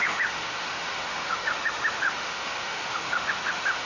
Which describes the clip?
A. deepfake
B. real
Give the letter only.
A